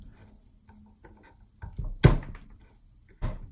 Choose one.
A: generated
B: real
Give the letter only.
B